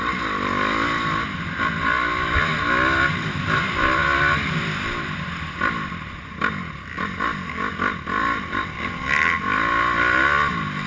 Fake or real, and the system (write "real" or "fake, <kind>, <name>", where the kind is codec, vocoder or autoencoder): real